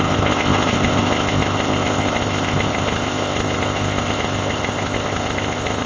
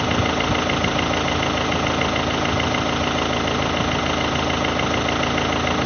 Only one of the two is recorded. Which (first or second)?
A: second